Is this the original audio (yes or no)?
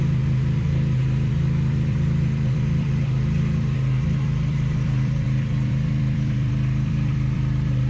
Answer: no